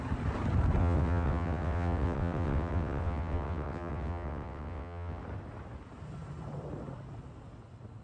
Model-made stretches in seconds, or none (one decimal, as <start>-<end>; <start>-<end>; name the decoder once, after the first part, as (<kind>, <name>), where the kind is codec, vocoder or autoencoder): 0.8-5.2 (vocoder, WaveNeXt)